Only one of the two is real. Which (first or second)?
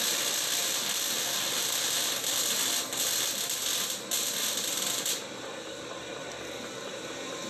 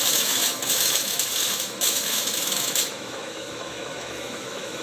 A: first